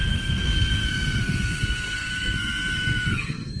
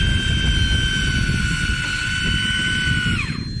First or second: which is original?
second